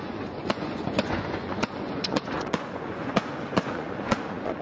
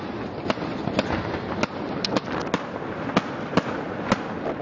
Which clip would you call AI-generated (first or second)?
first